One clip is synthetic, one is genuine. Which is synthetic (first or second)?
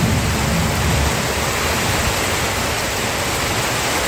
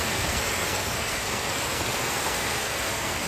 second